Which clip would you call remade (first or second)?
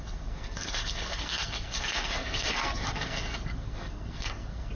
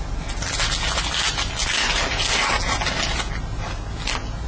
first